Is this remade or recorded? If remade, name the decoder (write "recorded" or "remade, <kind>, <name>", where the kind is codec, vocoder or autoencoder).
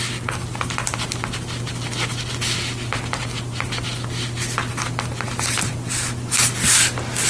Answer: recorded